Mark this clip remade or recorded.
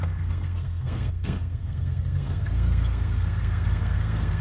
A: remade